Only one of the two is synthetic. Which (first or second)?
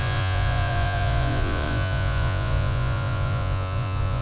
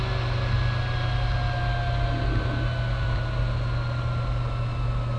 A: first